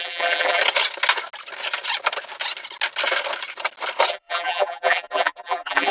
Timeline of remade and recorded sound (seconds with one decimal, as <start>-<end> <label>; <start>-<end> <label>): 0.0-0.6 remade; 0.6-4.1 recorded; 4.1-5.9 remade